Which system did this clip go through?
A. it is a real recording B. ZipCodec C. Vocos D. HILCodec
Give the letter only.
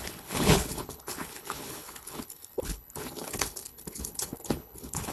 D